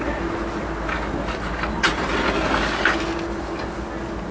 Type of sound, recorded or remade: recorded